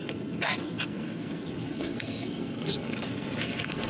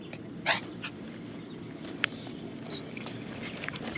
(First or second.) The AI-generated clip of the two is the first